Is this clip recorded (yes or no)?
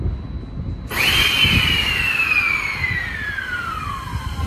yes